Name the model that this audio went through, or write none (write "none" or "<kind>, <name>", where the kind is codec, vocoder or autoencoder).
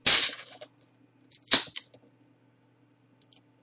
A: none